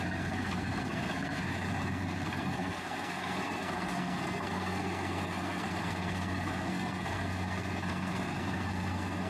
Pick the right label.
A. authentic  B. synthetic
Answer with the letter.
B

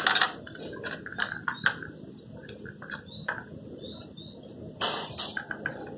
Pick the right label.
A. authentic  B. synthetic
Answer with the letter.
A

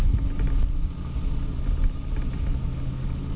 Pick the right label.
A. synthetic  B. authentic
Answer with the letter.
B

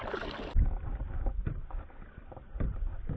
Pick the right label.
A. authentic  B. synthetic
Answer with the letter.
A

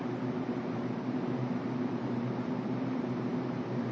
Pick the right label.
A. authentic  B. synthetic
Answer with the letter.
B